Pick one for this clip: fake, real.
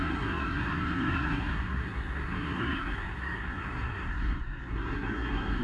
fake